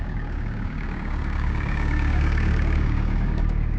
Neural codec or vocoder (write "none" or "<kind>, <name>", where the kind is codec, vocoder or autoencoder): codec, DAC